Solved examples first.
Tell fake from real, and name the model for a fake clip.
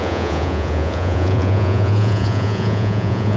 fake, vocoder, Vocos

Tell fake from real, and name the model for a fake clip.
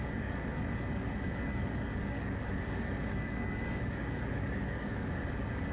fake, codec, DAC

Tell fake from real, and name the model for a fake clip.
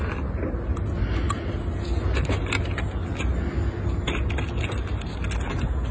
real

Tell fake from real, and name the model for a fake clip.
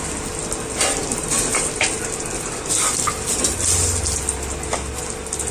real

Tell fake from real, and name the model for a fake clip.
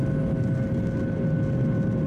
real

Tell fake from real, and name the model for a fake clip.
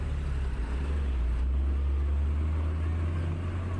real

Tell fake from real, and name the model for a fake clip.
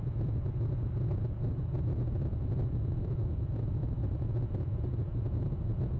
fake, vocoder, Vocos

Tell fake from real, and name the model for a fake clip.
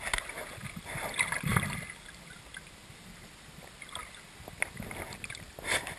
real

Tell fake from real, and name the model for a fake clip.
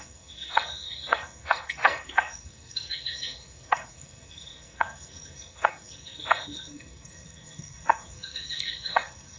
fake, codec, SNAC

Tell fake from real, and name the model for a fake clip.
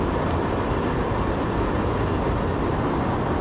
real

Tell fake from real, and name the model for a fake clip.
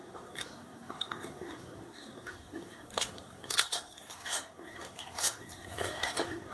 fake, codec, SNAC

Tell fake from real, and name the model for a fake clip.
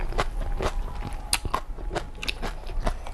real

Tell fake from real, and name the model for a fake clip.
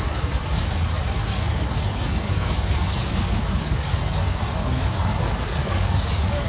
fake, codec, DAC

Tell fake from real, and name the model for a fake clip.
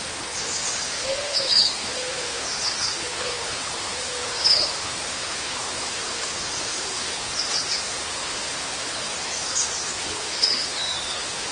fake, codec, HILCodec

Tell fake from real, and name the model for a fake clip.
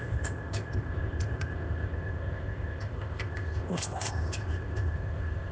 fake, codec, ZipCodec